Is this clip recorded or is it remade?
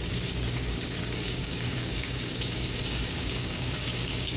remade